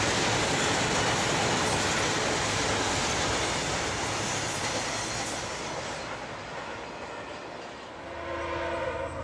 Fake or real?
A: real